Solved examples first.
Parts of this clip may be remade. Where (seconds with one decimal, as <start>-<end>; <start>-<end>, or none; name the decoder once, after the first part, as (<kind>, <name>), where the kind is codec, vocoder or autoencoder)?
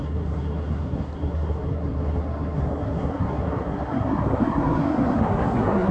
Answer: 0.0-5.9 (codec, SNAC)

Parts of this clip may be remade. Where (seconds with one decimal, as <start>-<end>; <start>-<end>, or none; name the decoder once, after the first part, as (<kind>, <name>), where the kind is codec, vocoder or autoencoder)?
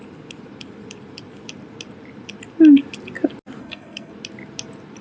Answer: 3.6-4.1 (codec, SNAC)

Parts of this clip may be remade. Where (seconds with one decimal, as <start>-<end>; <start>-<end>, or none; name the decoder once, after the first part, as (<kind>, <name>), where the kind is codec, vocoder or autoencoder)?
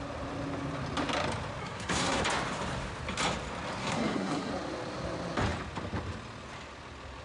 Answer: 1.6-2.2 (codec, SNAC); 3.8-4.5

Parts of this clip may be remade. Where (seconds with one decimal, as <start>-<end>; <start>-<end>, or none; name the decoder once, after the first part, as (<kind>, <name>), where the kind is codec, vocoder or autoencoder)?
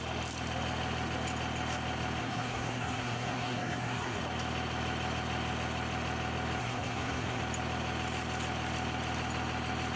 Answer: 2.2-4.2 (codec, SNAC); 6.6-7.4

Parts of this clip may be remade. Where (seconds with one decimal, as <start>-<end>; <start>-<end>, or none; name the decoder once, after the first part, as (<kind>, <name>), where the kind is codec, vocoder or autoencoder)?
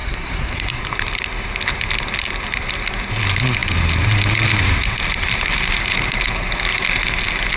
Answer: 0.0-0.8 (codec, SNAC)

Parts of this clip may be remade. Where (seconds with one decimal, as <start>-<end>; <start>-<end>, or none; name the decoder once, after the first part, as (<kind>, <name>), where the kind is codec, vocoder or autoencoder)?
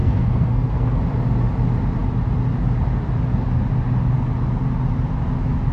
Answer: 0.0-1.0 (codec, SNAC)